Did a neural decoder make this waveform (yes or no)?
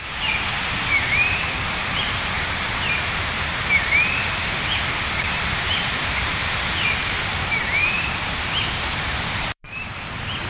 yes